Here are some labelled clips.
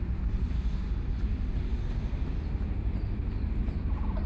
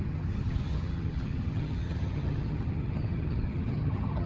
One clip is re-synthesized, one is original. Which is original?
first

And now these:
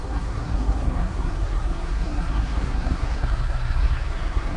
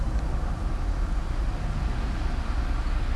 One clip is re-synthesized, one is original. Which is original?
second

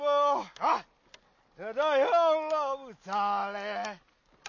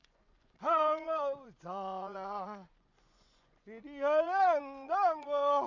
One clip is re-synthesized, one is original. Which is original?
first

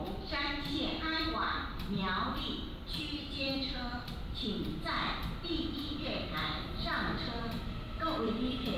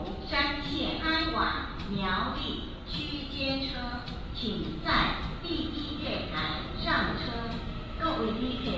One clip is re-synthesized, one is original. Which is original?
second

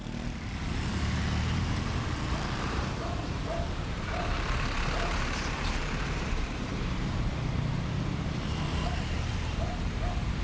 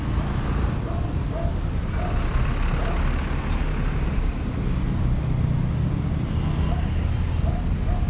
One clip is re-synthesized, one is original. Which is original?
second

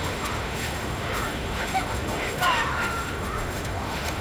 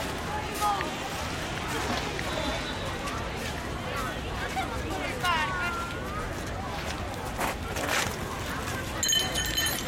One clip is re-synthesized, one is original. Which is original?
second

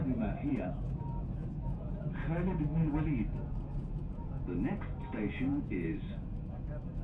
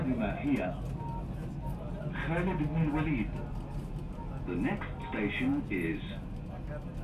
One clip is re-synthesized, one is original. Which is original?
second